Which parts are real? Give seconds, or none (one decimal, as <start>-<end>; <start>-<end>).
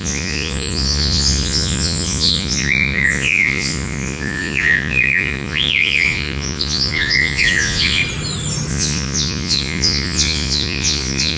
8.0-8.7